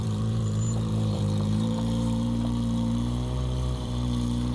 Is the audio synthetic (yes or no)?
yes